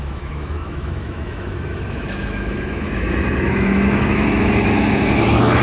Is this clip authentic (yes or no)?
no